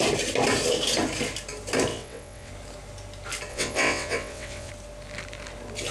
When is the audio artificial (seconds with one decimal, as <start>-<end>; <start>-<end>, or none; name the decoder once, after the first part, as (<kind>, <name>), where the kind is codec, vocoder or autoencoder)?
1.9-2.5 (vocoder, WaveNeXt); 3.5-4.7